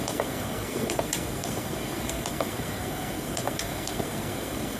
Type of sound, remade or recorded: remade